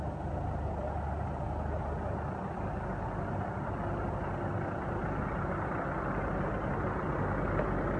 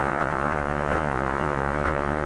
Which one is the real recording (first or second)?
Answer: first